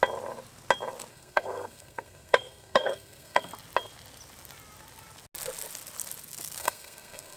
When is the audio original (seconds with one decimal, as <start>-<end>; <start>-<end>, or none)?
0.0-1.1; 3.5-6.6